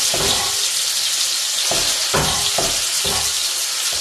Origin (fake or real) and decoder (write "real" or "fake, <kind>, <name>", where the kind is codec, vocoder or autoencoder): real